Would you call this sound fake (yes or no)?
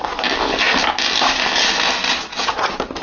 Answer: no